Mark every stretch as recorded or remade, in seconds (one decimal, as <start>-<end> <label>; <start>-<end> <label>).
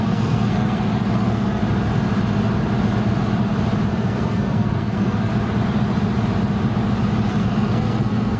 0.0-1.6 remade; 1.6-3.9 recorded; 3.9-5.3 remade; 5.3-7.3 recorded; 7.3-8.4 remade